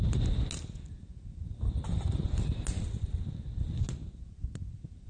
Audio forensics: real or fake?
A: real